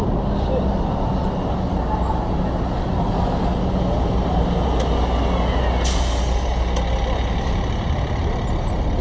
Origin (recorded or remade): recorded